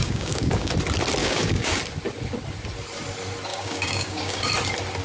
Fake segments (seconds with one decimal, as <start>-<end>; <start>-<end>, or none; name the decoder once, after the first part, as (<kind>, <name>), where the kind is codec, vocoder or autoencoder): 0.0-0.7 (codec, DAC); 1.2-1.8; 3.5-4.5